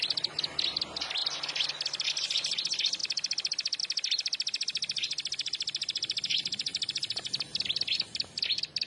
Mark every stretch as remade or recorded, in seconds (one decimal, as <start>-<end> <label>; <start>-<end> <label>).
0.0-8.9 recorded